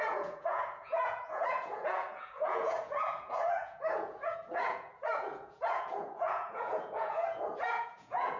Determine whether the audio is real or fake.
fake